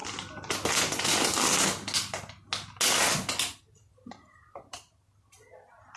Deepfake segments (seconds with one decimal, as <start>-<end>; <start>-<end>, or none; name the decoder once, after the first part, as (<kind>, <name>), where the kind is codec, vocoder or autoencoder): none

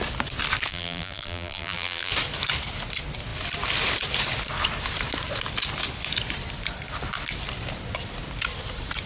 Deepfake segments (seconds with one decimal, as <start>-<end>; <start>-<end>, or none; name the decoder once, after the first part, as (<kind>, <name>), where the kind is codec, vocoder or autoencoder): 0.7-2.1 (vocoder, BigVGAN v2)